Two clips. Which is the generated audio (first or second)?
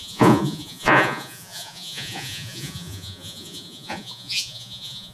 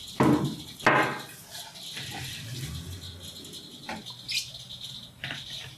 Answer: first